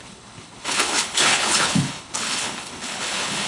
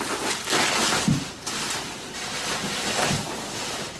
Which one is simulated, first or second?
first